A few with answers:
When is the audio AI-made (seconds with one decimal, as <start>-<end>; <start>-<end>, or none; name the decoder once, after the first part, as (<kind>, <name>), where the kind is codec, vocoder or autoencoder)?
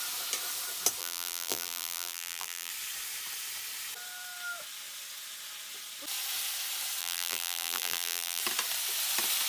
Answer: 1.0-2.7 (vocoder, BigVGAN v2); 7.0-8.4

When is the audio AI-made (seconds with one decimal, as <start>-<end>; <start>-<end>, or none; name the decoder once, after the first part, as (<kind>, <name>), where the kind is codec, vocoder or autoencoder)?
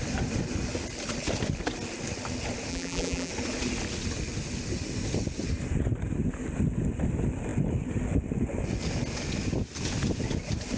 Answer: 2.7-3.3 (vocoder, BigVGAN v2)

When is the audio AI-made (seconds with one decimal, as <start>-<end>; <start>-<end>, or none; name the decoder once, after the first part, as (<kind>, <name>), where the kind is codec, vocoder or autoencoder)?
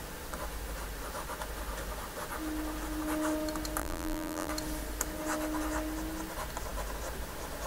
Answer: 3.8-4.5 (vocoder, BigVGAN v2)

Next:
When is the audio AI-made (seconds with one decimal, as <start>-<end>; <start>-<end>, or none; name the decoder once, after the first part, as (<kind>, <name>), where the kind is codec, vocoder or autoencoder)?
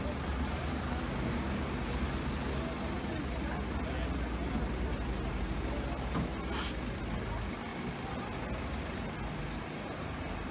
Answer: none